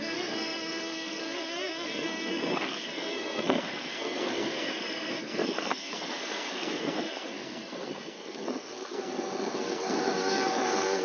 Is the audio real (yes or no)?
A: no